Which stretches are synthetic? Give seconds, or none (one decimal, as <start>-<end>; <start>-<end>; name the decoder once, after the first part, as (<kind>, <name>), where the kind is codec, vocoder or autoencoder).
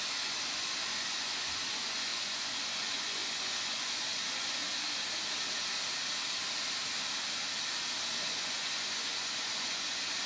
0.0-4.6 (vocoder, Vocos); 8.2-10.3